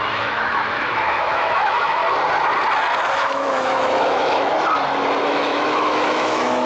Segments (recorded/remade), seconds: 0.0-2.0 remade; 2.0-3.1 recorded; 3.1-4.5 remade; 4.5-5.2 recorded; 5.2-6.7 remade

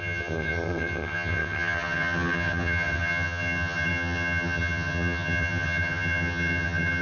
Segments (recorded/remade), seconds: 0.0-7.0 remade